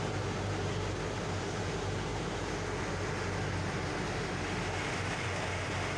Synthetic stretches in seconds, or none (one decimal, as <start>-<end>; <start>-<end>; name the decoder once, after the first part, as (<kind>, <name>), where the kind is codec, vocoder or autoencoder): none